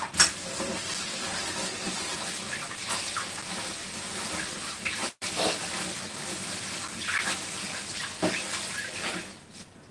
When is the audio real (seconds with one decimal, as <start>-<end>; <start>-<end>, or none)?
0.0-3.8; 4.4-5.0; 5.7-9.9